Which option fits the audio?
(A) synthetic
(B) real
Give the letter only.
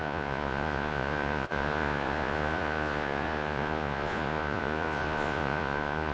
A